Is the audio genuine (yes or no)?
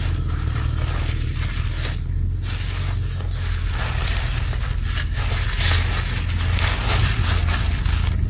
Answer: yes